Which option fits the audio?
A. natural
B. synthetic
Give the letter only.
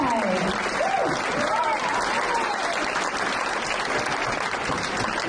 A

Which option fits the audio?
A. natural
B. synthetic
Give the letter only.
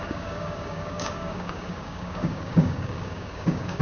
B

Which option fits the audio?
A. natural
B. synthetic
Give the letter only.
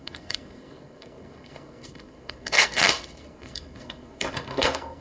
B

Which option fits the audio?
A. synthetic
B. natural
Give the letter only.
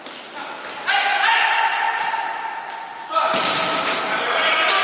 B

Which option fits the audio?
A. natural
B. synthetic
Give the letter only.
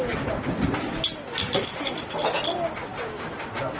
A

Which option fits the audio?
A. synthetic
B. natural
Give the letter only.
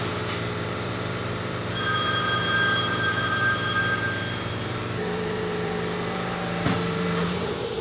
A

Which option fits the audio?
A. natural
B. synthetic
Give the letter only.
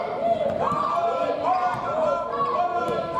A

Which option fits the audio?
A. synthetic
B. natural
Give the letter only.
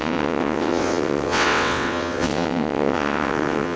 A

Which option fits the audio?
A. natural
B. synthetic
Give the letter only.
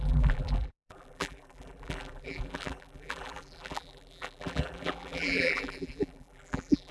B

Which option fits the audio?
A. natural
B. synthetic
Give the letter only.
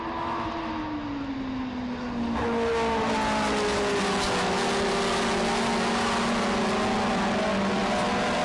A